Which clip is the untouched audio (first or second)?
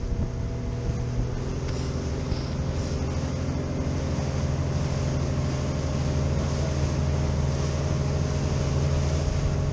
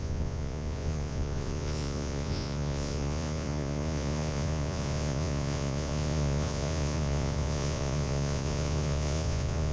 first